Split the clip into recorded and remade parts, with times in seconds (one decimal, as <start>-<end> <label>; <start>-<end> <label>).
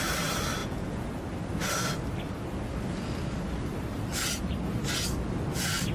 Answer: 0.0-0.6 recorded; 0.6-1.1 remade; 1.1-5.9 recorded